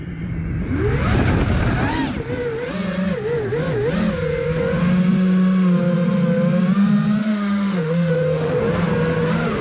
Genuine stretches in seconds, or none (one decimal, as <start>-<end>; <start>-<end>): 0.0-7.2; 8.6-9.6